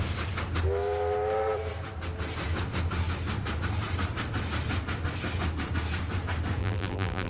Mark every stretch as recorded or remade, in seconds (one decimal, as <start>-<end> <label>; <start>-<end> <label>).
0.0-6.6 recorded; 6.6-7.3 remade